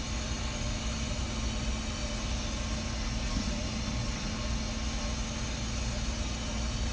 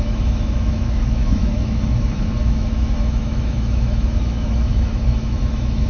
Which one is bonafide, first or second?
first